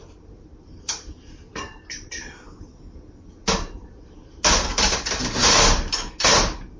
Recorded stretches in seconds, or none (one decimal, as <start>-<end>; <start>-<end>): 2.1-3.4; 5.1-6.8